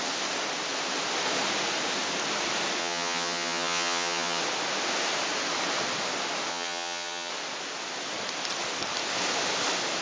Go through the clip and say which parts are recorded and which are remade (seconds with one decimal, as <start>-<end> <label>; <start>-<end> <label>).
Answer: 0.0-2.8 recorded; 2.8-4.4 remade; 4.4-6.5 recorded; 6.5-7.3 remade; 7.3-10.0 recorded